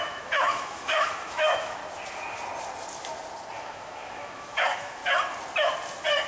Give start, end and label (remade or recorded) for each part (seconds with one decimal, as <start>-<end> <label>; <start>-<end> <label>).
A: 0.0-1.8 remade; 1.8-3.6 recorded; 3.6-5.0 remade; 5.0-6.3 recorded